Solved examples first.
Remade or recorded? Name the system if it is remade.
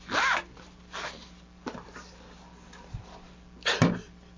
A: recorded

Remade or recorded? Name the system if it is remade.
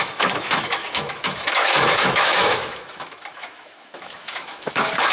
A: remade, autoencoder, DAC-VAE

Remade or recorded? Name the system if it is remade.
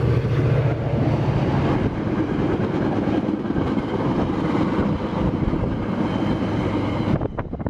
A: recorded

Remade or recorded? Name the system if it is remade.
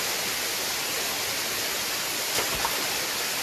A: recorded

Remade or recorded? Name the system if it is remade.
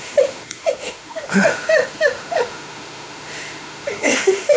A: remade, autoencoder, DAC-VAE